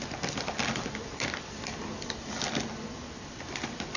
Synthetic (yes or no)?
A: no